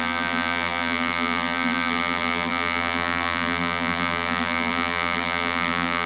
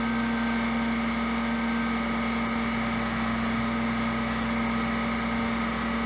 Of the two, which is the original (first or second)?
second